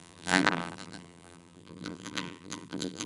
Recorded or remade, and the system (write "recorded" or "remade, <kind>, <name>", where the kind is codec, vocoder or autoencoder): remade, vocoder, BigVGAN v2